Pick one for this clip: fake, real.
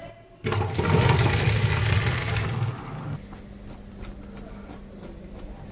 real